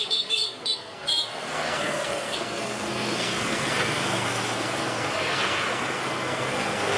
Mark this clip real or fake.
fake